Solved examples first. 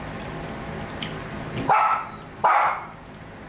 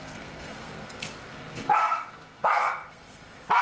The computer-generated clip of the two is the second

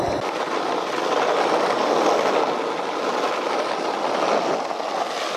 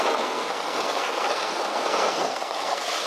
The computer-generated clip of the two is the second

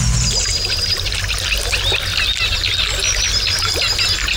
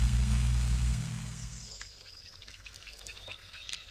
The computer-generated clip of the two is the second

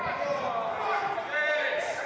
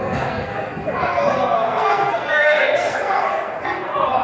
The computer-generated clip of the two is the second